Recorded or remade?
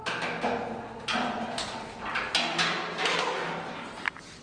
recorded